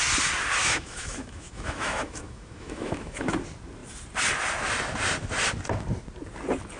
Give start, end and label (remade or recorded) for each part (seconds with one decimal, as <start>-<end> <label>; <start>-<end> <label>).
0.0-0.6 recorded; 0.6-3.3 remade; 3.3-6.8 recorded